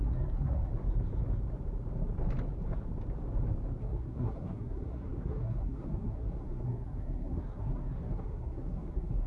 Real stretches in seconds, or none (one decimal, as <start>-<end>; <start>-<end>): 0.7-3.8